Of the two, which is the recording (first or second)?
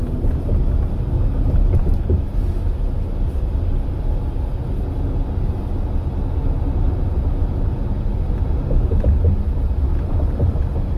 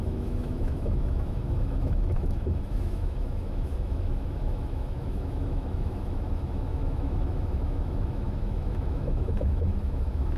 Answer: first